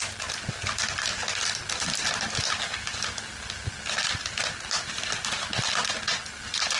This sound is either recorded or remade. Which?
recorded